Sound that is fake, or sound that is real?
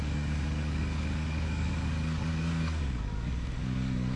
fake